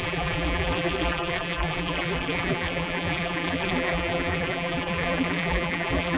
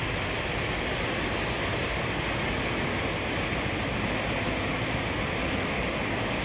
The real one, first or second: second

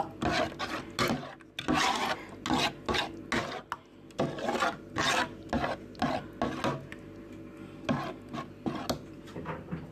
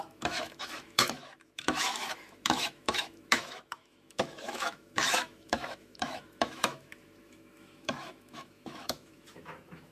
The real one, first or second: first